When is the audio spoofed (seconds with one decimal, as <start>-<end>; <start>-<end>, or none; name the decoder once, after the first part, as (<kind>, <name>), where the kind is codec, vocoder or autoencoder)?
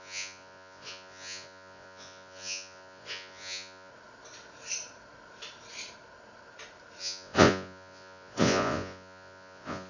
0.0-3.9 (vocoder, Vocos); 7.0-9.9